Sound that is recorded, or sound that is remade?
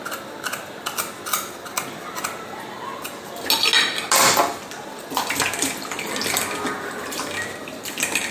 recorded